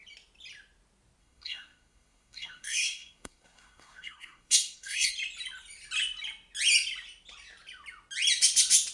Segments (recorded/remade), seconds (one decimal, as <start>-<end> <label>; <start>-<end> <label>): 0.0-1.2 recorded; 1.2-5.1 remade; 5.1-8.9 recorded